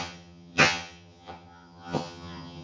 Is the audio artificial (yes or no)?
yes